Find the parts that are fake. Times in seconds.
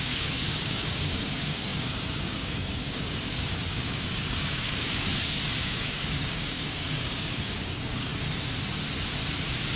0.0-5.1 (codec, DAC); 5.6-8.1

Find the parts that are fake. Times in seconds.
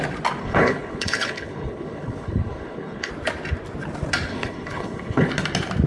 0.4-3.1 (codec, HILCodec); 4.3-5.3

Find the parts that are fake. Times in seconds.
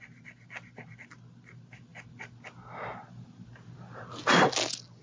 none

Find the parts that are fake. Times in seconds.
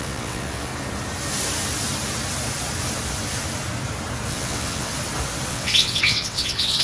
0.0-0.7 (vocoder, WaveNeXt); 4.3-4.9; 5.5-6.8